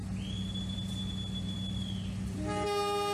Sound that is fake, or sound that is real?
real